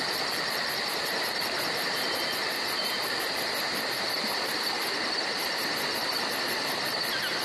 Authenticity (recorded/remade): recorded